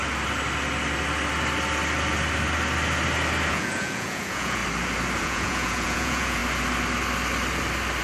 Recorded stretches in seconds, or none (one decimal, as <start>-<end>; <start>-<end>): 0.0-3.5; 4.6-5.2; 6.4-8.0